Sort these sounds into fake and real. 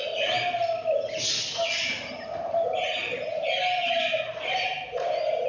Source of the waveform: real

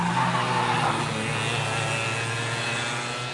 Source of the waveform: real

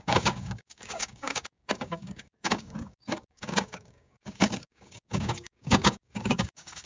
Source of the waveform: fake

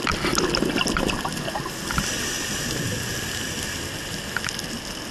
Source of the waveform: real